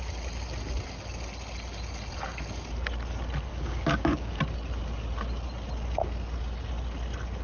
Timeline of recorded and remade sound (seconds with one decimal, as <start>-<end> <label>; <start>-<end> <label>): 0.0-3.5 recorded; 3.5-4.4 remade; 4.4-7.4 recorded